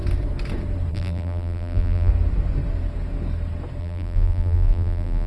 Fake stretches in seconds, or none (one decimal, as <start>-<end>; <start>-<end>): 0.9-2.1; 3.8-5.3